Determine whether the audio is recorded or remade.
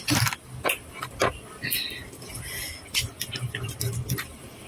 recorded